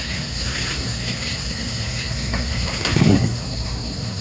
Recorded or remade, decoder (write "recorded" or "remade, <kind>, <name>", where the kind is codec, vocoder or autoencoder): remade, codec, SNAC